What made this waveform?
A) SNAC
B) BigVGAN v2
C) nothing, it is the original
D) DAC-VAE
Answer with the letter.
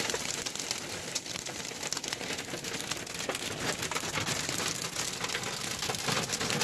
C